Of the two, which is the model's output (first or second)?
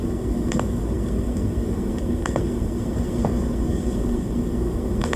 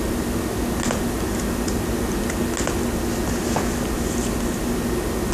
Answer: first